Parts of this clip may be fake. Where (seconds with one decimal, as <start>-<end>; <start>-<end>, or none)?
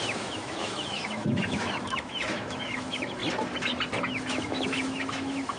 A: 0.0-3.2; 4.0-5.6